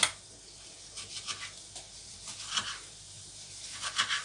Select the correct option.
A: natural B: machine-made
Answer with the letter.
A